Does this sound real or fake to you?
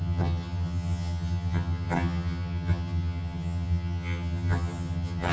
fake